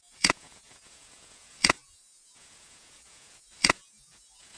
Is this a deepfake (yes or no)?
yes